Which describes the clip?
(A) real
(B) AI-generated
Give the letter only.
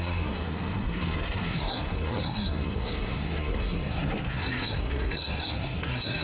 B